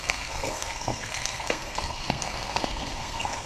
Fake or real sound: fake